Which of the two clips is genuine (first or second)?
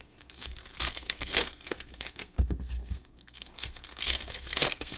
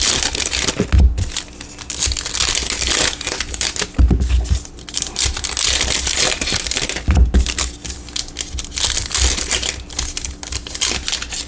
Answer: second